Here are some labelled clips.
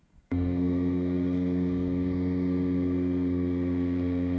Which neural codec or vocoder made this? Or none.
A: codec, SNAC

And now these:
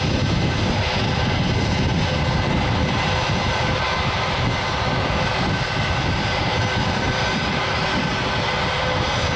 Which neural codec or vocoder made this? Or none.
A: none